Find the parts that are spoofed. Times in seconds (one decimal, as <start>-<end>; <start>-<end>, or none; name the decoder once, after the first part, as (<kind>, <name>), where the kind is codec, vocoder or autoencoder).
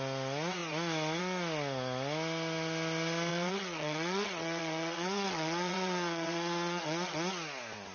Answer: 3.3-7.3 (vocoder, WaveNeXt)